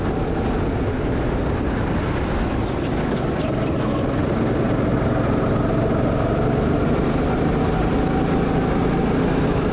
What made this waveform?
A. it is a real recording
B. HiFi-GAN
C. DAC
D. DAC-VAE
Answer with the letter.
A